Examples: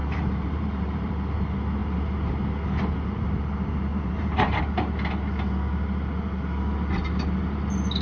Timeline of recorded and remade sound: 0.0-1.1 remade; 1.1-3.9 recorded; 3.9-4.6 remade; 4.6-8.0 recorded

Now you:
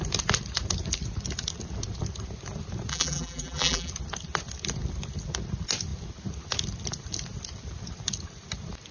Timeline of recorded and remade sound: 0.0-2.9 recorded; 2.9-3.9 remade; 3.9-8.9 recorded

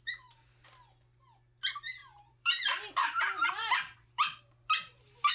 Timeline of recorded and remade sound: 0.0-2.0 recorded; 2.0-5.3 remade